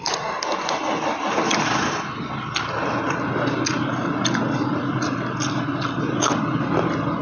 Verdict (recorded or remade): recorded